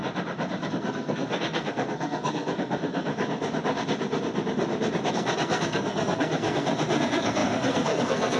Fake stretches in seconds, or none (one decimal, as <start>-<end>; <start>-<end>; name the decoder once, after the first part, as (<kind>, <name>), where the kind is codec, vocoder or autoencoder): 0.7-3.1 (codec, SNAC); 5.1-8.4